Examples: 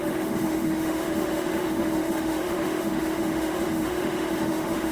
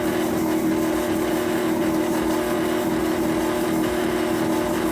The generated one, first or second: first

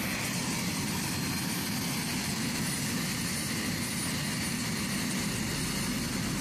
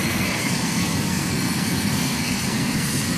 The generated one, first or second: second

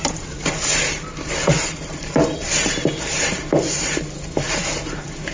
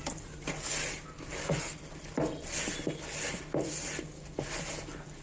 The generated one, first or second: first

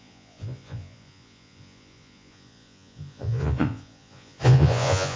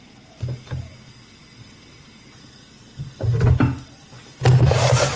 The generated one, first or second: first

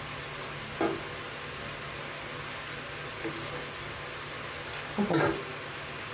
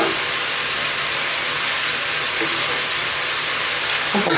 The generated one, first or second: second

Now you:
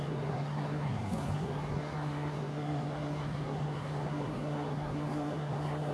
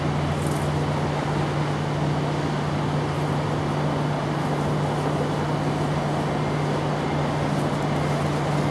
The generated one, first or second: first